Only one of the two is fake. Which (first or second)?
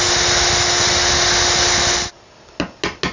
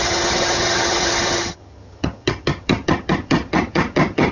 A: second